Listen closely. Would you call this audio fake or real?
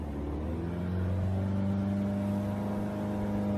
real